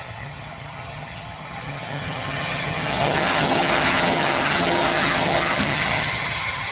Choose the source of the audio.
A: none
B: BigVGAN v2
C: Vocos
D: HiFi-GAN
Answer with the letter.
D